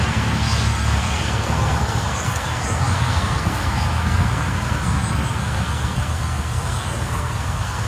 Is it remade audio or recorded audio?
remade